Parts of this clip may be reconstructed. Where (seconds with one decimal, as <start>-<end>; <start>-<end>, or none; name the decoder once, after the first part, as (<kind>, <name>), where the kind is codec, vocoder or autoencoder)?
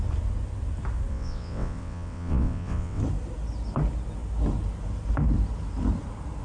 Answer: 1.1-3.0 (vocoder, WaveNeXt)